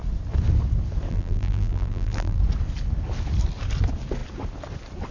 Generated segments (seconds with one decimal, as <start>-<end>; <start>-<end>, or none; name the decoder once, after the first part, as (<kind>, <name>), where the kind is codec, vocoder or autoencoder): 1.1-2.4 (vocoder, BigVGAN v2)